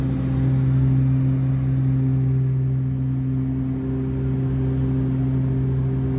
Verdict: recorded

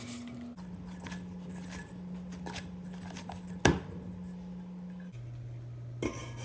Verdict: recorded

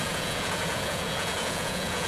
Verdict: remade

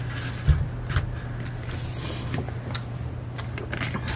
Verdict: recorded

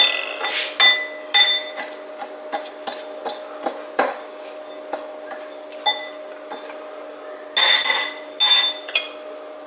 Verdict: recorded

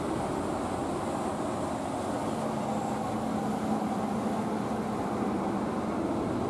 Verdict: recorded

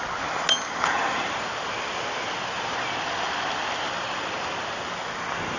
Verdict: recorded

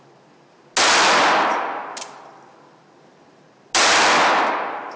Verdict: recorded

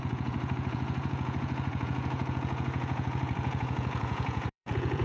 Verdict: remade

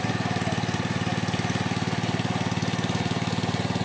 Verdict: recorded